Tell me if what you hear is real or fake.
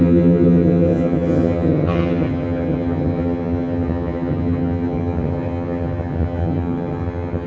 fake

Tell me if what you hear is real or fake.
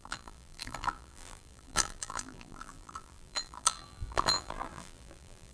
fake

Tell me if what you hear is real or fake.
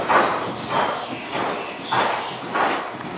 real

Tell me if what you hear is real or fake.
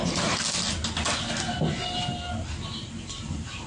real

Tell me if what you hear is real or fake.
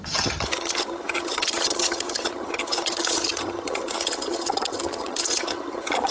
fake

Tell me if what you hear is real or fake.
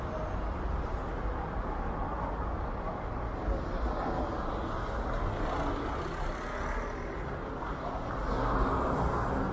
real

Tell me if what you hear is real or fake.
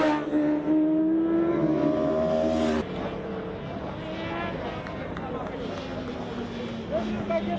real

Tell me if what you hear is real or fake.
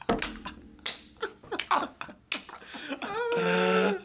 real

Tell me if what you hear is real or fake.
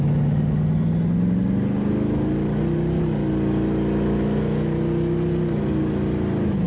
real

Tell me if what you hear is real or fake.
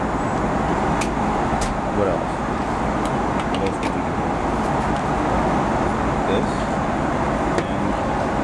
real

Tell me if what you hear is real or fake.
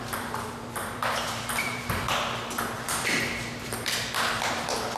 fake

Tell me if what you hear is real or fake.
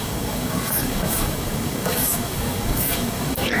fake